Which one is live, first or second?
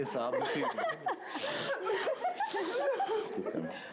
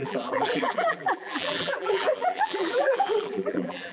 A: first